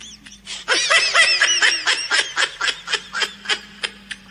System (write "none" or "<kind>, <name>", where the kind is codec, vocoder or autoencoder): none